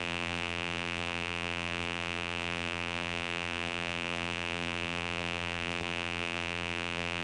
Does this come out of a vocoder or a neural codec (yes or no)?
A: yes